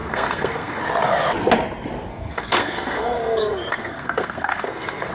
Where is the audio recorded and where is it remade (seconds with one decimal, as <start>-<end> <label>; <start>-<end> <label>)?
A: 0.0-0.8 remade; 0.8-2.1 recorded; 2.1-5.1 remade